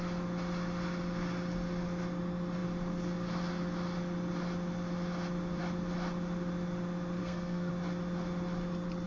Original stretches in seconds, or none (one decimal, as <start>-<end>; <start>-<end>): 0.0-7.2; 7.7-9.1